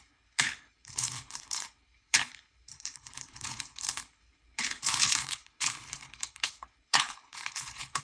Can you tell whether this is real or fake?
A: fake